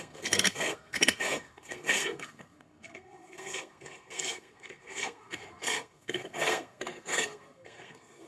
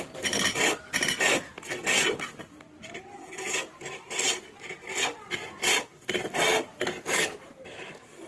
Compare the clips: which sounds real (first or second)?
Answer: second